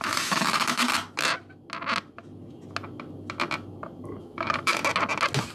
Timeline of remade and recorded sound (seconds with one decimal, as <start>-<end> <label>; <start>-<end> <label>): 0.0-0.9 remade; 0.9-4.2 recorded; 4.2-4.8 remade; 4.8-5.5 recorded